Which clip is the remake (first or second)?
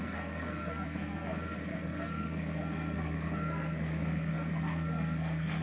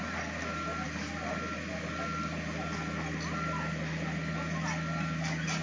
first